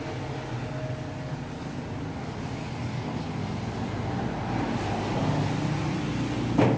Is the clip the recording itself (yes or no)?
yes